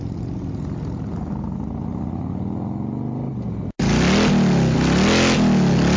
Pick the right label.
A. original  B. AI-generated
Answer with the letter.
A